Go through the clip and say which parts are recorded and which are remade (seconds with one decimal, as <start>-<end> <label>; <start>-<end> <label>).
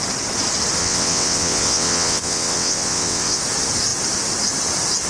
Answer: 0.0-0.8 recorded; 0.8-3.4 remade; 3.4-5.1 recorded